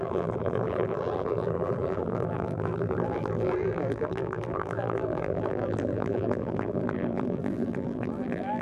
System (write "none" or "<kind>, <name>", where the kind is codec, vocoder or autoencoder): vocoder, BigVGAN v2